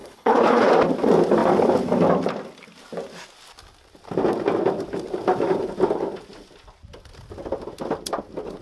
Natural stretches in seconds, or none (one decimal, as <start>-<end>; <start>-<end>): 0.7-8.6